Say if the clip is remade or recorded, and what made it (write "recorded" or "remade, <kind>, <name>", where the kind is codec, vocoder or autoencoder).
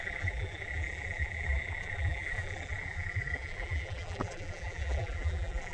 remade, vocoder, BigVGAN v2